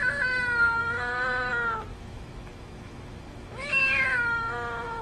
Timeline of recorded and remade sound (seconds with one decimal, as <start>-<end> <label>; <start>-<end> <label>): 0.0-0.8 recorded; 0.8-1.5 remade; 1.5-1.9 recorded; 1.9-5.0 remade